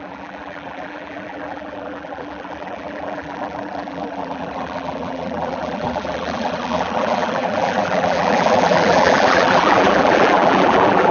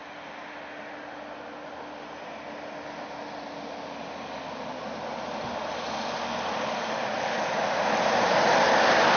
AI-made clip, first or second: first